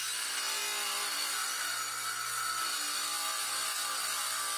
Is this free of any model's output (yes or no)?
yes